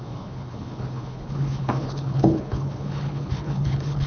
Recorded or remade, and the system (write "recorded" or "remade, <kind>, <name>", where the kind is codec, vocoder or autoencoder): remade, codec, HILCodec